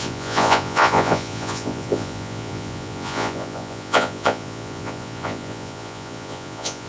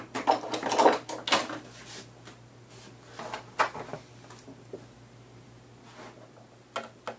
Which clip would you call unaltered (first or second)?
second